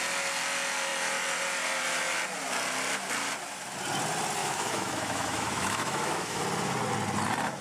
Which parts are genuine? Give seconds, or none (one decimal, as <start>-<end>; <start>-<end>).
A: 0.0-4.4; 6.4-7.6